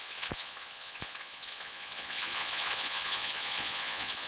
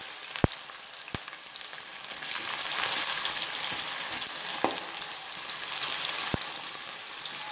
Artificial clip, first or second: first